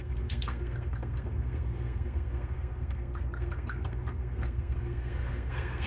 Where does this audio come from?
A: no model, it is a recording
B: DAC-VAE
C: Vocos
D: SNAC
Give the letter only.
D